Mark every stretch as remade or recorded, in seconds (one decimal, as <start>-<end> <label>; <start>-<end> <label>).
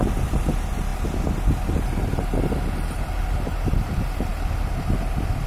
0.0-5.5 recorded